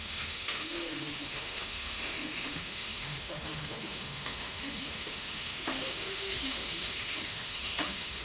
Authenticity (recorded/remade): remade